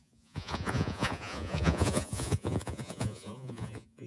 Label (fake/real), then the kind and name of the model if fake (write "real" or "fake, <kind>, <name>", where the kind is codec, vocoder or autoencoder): fake, vocoder, Vocos